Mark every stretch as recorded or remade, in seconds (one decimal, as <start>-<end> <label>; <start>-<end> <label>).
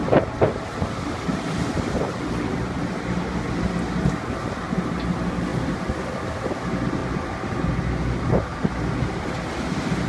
0.0-3.5 remade; 3.5-5.5 recorded; 5.5-6.6 remade; 6.6-7.0 recorded; 7.0-7.8 remade; 7.8-8.5 recorded; 8.5-9.1 remade; 9.1-10.1 recorded